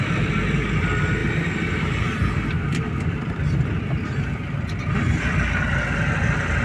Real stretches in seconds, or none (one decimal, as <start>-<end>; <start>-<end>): 0.0-6.6